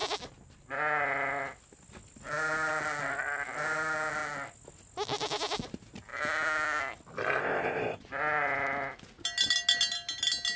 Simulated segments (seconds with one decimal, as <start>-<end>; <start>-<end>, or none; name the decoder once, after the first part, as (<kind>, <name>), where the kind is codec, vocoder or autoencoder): 7.4-8.0 (codec, ZipCodec)